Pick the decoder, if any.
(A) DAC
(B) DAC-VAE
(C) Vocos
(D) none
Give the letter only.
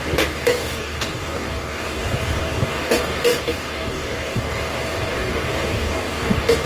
A